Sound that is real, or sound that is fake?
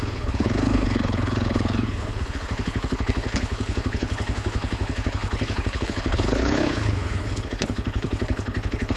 fake